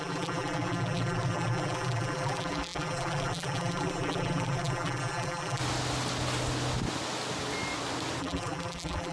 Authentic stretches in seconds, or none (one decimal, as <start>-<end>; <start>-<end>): 5.6-8.2